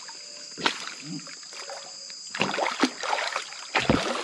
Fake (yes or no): no